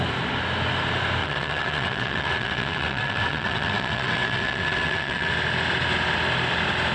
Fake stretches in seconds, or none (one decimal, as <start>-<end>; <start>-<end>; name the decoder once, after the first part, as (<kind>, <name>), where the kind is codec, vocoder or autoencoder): 1.2-5.3 (vocoder, WaveNeXt)